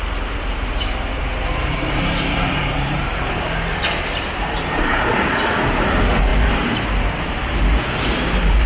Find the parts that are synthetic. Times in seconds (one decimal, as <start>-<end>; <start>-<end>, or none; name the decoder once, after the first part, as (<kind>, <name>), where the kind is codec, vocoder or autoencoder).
0.0-8.7 (vocoder, BigVGAN v2)